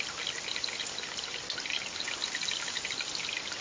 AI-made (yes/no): no